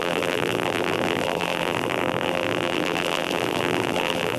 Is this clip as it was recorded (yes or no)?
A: no